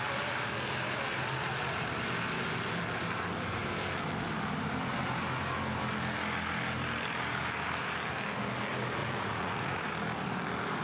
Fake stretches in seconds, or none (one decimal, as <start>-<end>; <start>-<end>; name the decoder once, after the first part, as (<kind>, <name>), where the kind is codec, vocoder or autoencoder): 9.0-9.9 (vocoder, Vocos)